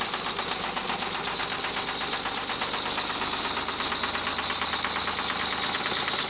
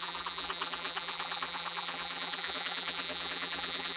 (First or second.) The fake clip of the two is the second